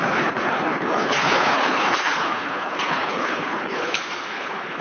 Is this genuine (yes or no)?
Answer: no